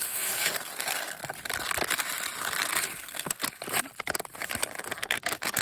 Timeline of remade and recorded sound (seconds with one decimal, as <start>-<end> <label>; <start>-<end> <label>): 0.0-1.2 remade; 1.2-3.0 recorded; 3.0-3.4 remade; 3.4-5.0 recorded; 5.0-5.6 remade